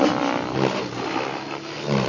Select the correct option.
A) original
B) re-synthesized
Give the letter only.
A